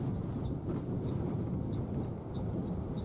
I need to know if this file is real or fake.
real